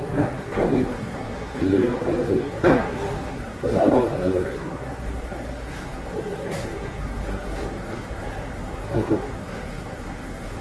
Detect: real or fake fake